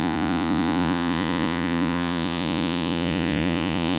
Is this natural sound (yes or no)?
no